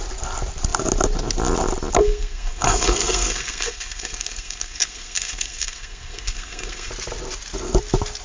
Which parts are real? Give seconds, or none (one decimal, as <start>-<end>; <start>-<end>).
0.0-2.0; 6.9-8.2